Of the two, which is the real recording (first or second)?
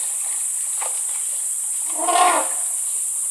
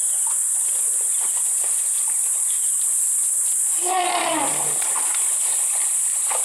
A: first